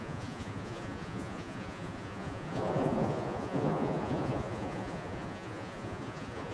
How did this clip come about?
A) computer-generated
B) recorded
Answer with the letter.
A